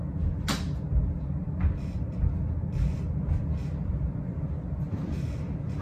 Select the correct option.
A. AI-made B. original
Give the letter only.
B